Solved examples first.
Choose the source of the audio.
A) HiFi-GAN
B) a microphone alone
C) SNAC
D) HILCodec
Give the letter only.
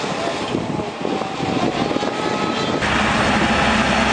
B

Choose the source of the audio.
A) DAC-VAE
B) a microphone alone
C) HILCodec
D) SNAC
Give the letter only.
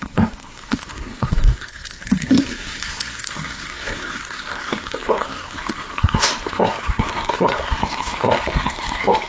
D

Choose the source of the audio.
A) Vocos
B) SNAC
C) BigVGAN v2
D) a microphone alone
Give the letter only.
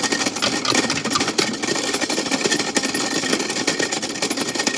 D